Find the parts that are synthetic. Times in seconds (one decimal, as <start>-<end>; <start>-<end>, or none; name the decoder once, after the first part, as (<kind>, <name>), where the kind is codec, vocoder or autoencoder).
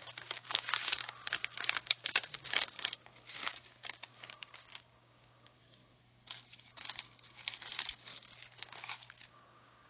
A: 0.0-3.1 (codec, DAC); 4.0-5.8; 8.6-9.9